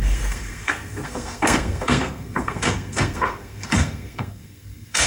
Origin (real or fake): fake